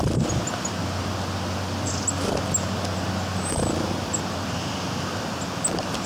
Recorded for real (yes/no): yes